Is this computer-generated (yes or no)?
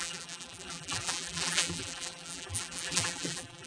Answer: yes